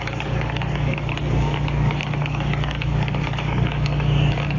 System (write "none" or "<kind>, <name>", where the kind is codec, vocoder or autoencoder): codec, DAC